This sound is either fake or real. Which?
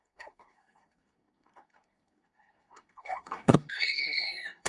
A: fake